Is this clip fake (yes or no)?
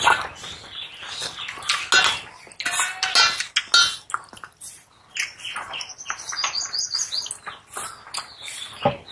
no